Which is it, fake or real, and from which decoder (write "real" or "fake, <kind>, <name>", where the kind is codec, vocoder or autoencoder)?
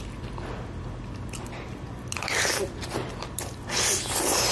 real